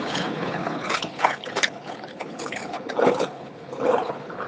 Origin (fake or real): fake